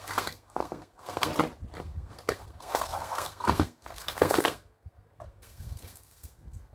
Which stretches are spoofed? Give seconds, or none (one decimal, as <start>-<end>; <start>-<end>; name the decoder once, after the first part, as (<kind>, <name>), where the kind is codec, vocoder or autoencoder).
0.0-1.3 (codec, SNAC); 1.8-6.7